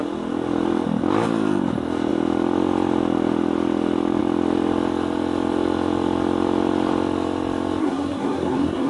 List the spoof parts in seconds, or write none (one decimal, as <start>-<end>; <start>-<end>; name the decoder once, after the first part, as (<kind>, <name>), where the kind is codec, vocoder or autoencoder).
7.8-8.9 (codec, SNAC)